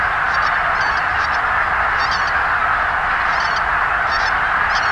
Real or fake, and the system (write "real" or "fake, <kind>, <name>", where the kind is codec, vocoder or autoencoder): real